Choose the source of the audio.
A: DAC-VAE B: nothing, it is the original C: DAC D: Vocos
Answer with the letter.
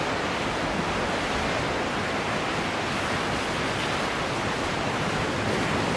B